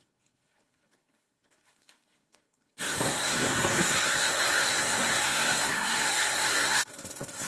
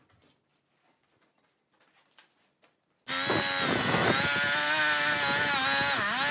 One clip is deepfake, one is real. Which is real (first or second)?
second